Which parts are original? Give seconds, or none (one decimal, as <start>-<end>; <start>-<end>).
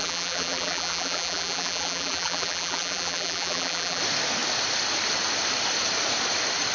4.0-6.7